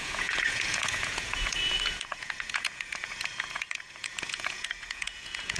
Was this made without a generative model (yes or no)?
no